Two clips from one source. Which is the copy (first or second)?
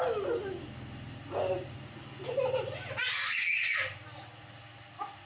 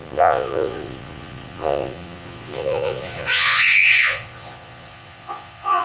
second